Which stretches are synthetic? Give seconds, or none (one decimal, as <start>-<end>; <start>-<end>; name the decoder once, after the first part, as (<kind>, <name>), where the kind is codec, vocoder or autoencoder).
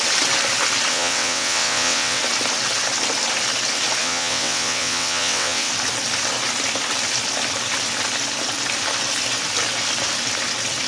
0.9-2.2 (vocoder, WaveNeXt); 4.0-5.7